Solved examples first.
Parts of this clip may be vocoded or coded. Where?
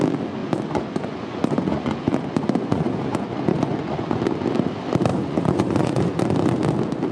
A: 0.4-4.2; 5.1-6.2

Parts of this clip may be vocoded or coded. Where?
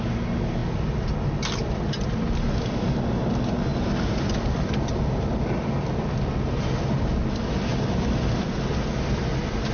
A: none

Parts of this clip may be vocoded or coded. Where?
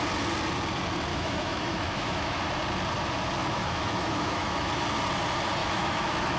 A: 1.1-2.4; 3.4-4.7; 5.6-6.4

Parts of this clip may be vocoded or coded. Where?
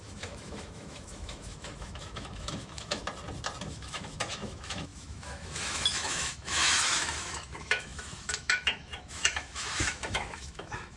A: 0.0-3.0; 3.7-11.0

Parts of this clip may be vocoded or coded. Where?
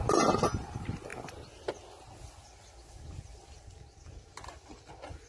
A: none